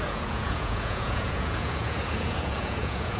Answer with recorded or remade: remade